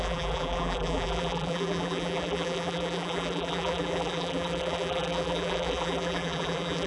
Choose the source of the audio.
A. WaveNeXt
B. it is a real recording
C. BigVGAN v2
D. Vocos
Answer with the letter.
C